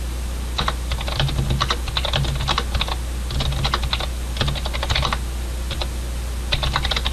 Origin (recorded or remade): recorded